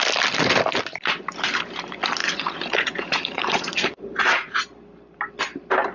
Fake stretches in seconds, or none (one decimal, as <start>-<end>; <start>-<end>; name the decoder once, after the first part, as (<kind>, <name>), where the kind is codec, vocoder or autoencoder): 2.2-4.6 (vocoder, Vocos)